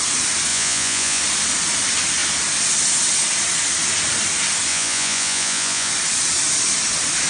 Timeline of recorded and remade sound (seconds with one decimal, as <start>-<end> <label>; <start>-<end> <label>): 0.0-0.5 recorded; 0.5-1.2 remade; 1.2-4.7 recorded; 4.7-5.9 remade; 5.9-7.3 recorded